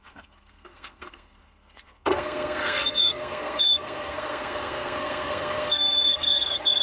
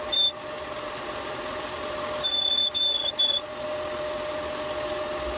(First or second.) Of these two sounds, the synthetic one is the first